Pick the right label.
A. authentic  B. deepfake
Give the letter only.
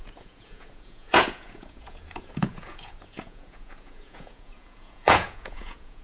B